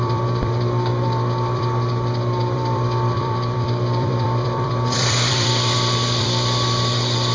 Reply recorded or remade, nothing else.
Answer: remade